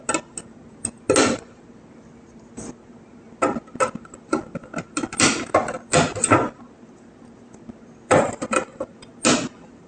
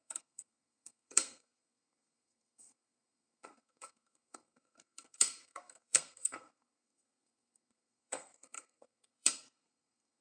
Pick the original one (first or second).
first